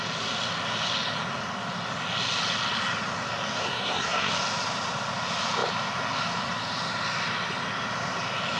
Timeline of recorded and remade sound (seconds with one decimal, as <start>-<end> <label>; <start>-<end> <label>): 0.0-3.6 recorded; 3.6-4.3 remade; 4.3-8.6 recorded

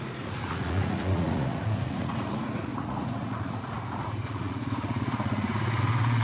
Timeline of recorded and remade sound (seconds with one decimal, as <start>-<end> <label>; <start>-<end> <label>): 0.0-6.2 remade

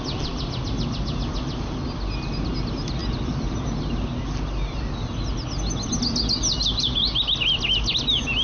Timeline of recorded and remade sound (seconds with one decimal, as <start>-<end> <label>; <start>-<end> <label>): 0.0-8.4 recorded

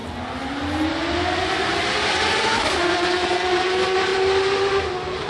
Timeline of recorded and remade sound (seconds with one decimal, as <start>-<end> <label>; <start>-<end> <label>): 0.0-5.3 recorded

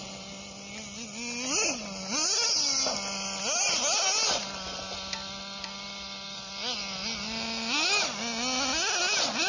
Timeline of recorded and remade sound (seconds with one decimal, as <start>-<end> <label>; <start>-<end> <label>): 0.0-9.5 recorded

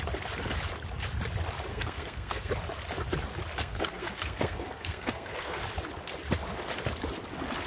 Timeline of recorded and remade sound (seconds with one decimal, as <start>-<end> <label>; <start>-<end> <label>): 0.0-1.7 recorded; 1.7-2.5 remade; 2.5-3.6 recorded; 3.6-5.6 remade; 5.6-7.7 recorded

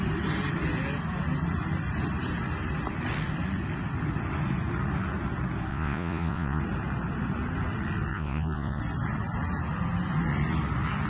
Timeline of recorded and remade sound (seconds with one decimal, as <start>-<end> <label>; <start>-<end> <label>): 0.0-5.7 recorded; 5.7-6.6 remade; 6.6-8.1 recorded; 8.1-8.8 remade; 8.8-11.1 recorded

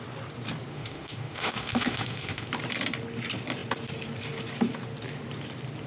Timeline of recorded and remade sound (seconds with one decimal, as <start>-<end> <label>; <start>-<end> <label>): 0.0-0.7 recorded; 0.7-2.5 remade; 2.5-5.9 recorded